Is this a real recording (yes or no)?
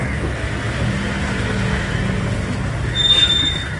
yes